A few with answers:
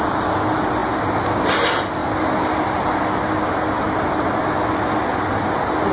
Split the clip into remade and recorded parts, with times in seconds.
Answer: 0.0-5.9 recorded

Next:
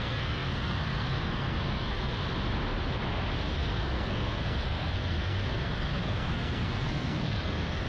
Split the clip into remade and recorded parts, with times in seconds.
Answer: 0.0-2.2 remade; 2.2-3.5 recorded; 3.5-7.9 remade

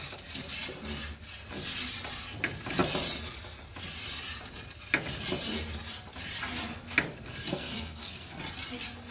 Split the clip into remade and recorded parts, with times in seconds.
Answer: 0.0-7.5 recorded; 7.5-8.4 remade; 8.4-9.1 recorded

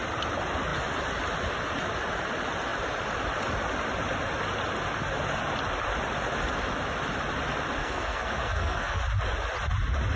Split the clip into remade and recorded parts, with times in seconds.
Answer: 0.0-7.8 recorded; 7.8-9.0 remade; 9.0-10.2 recorded

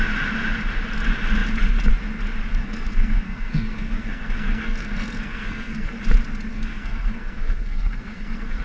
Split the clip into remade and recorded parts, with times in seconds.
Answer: 0.0-2.6 recorded; 2.6-6.0 remade; 6.0-6.5 recorded; 6.5-8.6 remade

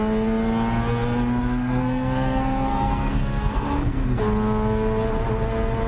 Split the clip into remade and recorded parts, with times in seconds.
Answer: 0.0-1.4 recorded; 1.4-4.2 remade; 4.2-5.9 recorded

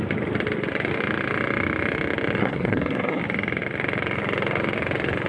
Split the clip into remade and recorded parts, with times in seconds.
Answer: 0.0-2.4 recorded; 2.4-3.2 remade; 3.2-5.3 recorded

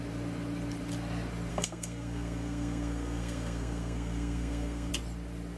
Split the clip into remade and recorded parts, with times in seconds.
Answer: 0.0-1.5 recorded; 1.5-4.9 remade; 4.9-5.6 recorded